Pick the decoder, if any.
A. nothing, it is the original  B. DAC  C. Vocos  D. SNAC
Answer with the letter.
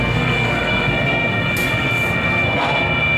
D